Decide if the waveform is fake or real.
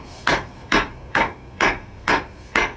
fake